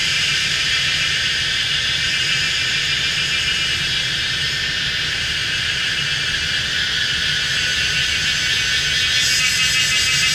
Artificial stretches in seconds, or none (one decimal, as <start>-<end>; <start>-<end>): 0.0-2.4